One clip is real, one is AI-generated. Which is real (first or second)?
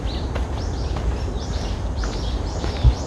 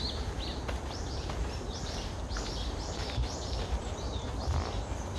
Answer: first